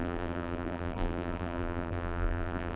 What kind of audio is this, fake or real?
fake